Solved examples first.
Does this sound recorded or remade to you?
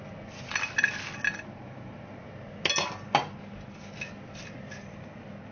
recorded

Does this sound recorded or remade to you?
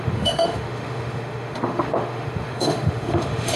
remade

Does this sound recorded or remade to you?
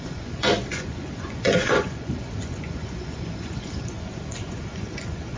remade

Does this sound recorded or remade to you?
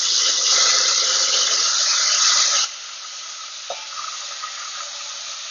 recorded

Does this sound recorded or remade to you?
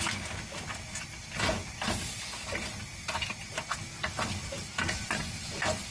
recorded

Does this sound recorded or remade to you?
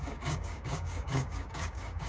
remade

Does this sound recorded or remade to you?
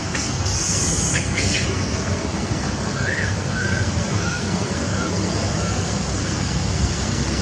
remade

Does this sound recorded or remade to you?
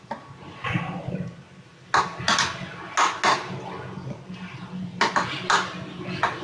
recorded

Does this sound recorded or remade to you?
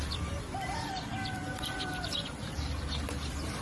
remade